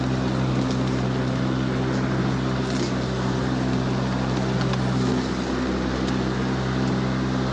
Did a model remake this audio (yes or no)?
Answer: no